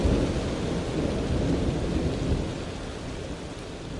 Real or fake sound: real